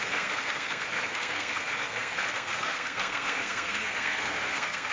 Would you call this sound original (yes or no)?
no